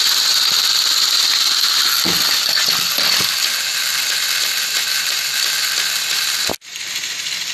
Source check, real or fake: real